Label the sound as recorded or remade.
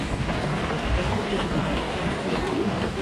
remade